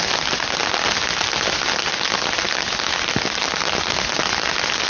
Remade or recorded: recorded